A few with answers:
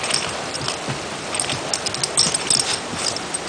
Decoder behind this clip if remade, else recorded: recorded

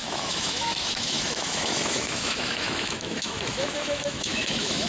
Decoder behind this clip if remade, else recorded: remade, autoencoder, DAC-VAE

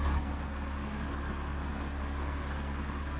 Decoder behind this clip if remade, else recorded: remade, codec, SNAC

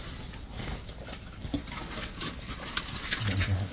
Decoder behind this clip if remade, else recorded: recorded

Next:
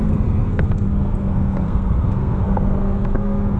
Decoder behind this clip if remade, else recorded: remade, codec, SNAC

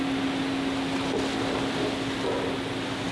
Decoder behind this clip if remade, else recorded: recorded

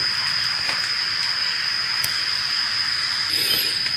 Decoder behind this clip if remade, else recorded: recorded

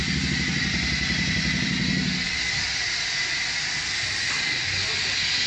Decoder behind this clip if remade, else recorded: recorded